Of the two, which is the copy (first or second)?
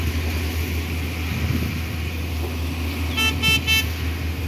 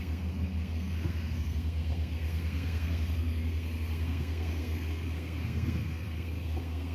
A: second